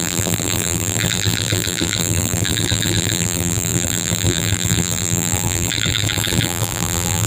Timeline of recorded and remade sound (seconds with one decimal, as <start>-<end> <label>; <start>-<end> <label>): 0.0-7.3 remade